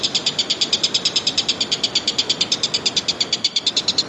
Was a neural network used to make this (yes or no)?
no